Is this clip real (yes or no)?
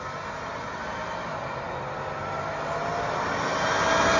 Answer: yes